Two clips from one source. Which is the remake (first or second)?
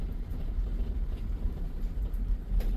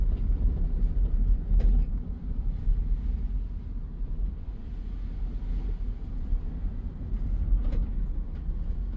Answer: first